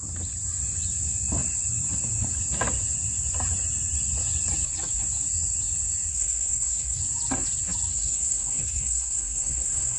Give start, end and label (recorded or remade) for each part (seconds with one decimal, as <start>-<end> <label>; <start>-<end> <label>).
0.0-6.1 recorded; 6.1-7.0 remade; 7.0-7.9 recorded; 7.9-10.0 remade